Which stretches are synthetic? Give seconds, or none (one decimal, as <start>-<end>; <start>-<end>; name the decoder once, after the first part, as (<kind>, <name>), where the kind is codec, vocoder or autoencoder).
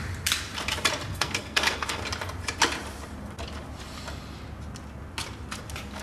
1.1-2.0 (codec, SNAC)